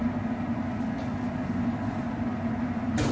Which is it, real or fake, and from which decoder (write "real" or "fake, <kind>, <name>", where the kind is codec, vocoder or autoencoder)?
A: real